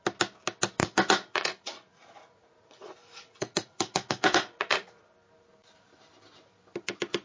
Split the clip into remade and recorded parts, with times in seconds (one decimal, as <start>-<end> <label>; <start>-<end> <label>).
0.0-0.8 recorded; 0.8-5.1 remade; 5.1-7.2 recorded